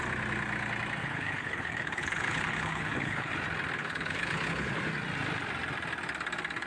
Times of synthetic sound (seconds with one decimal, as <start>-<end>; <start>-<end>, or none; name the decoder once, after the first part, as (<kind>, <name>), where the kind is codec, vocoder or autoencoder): 1.0-3.3 (codec, HILCodec); 3.8-4.8